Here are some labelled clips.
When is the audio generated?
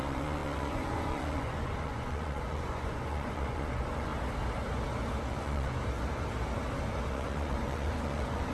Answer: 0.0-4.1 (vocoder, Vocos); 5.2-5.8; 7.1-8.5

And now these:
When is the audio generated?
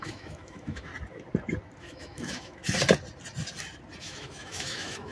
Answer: 0.0-0.9 (autoencoder, DAC-VAE); 1.8-2.6; 4.0-5.1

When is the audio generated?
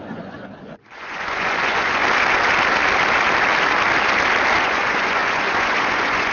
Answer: 0.0-2.0 (vocoder, Vocos); 4.6-6.3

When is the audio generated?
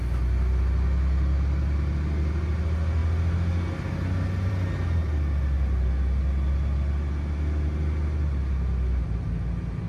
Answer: none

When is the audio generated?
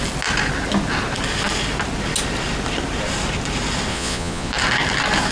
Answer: 3.9-4.5 (vocoder, Vocos)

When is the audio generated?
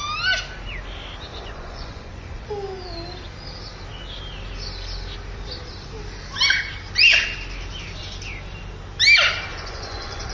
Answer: 1.3-2.5 (vocoder, Vocos); 9.5-10.3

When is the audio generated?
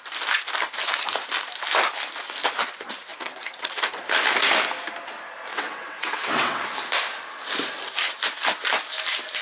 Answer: 3.1-3.8 (vocoder, WaveNeXt); 5.5-6.6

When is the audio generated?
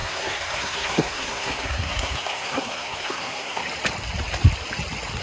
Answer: 0.0-3.6 (codec, SNAC)